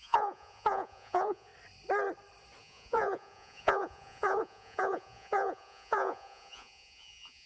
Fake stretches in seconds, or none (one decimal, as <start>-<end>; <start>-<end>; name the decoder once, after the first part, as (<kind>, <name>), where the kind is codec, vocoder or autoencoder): 0.0-1.5 (vocoder, Vocos); 2.6-7.5